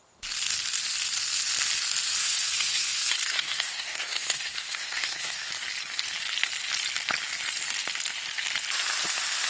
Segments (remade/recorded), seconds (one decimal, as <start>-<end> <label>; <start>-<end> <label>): 0.0-2.2 recorded; 2.2-5.5 remade; 5.5-9.5 recorded